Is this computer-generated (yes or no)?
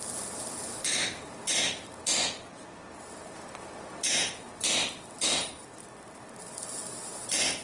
no